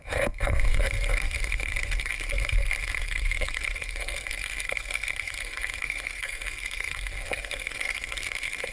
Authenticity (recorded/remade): remade